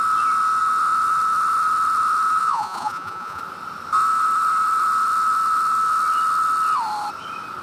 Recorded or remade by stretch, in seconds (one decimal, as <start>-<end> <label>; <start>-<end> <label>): 0.0-2.4 recorded; 2.4-3.4 remade; 3.4-7.6 recorded